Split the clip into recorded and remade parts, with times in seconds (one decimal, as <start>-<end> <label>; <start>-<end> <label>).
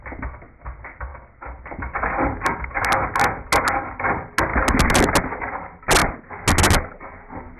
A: 0.0-7.6 recorded